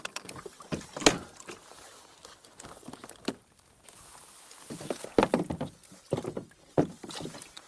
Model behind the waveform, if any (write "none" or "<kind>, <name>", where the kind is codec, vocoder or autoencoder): none